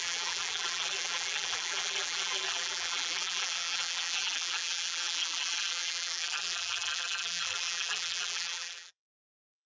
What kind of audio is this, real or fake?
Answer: fake